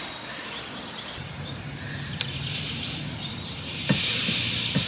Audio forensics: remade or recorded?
remade